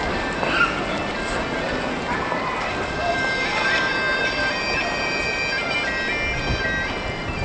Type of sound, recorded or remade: recorded